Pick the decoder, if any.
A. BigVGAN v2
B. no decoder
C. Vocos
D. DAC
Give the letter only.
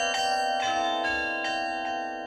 B